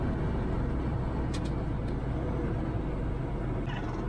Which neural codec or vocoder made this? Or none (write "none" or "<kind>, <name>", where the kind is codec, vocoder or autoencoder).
none